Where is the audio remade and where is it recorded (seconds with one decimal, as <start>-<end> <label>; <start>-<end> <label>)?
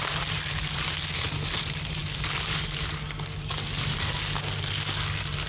0.0-5.5 recorded